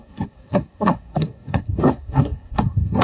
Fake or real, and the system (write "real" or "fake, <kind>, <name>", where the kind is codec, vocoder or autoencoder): fake, codec, SNAC